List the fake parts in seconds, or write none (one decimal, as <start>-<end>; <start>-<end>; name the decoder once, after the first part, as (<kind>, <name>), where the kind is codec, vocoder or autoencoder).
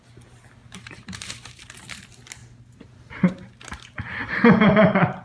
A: 0.6-2.0 (vocoder, BigVGAN v2); 2.4-5.2